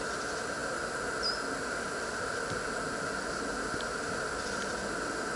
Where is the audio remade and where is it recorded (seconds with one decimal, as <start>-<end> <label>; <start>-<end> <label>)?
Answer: 0.0-5.4 recorded

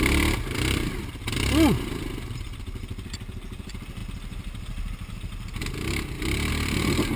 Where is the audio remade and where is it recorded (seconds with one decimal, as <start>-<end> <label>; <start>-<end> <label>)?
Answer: 0.0-7.2 remade

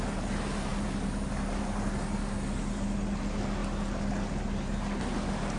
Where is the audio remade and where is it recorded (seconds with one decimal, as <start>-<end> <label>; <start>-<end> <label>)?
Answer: 0.0-5.6 recorded